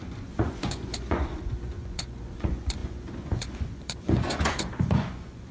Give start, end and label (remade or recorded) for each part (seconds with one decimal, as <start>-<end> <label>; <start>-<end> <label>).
0.0-5.5 remade